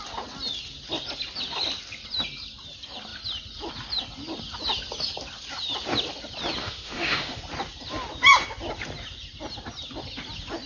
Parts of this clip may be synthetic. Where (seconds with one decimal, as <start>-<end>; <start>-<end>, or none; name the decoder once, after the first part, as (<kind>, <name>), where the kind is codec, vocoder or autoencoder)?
6.6-7.4 (autoencoder, DAC-VAE)